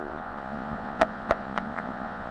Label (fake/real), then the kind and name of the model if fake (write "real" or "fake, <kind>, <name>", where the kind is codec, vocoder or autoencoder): fake, vocoder, Vocos